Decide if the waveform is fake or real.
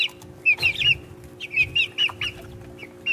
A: real